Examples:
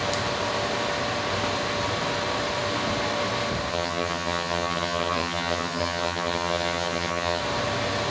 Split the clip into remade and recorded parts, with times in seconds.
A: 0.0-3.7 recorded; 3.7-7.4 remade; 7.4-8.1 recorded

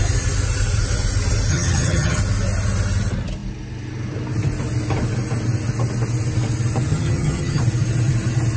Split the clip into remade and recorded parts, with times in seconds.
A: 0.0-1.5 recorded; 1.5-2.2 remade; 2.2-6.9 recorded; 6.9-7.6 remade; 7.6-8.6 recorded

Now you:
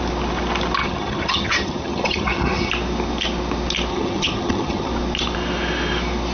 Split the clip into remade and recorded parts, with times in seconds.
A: 0.0-0.8 recorded; 0.8-2.7 remade; 2.7-3.9 recorded; 3.9-4.9 remade; 4.9-6.3 recorded